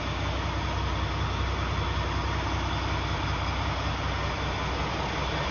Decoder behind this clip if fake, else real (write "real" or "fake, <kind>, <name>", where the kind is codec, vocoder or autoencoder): real